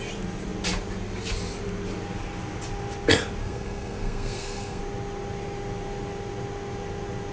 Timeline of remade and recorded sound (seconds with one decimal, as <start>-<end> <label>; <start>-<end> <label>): 0.0-3.4 recorded; 3.4-4.8 remade; 4.8-7.3 recorded